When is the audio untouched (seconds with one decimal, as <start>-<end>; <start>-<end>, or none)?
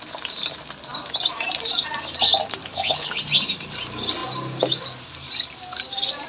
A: 0.0-2.6; 3.2-6.3